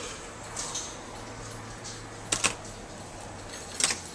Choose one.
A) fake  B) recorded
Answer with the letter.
B